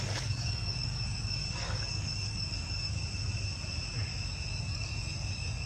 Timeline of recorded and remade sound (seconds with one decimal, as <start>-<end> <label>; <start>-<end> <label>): 0.0-3.0 remade; 3.0-4.6 recorded; 4.6-5.7 remade